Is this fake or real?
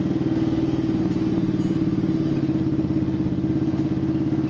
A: real